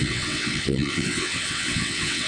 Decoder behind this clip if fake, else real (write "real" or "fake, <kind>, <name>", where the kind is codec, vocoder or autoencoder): fake, vocoder, WaveNeXt